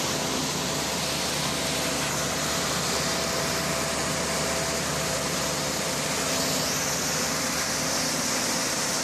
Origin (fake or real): real